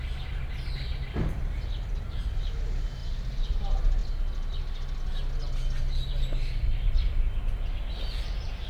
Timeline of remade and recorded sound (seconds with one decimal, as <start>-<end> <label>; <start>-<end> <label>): 0.0-3.0 recorded; 3.0-3.6 remade; 3.6-8.7 recorded